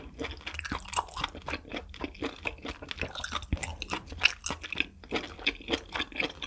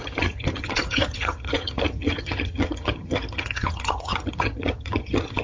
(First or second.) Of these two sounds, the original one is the first